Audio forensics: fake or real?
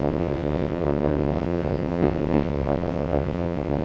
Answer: fake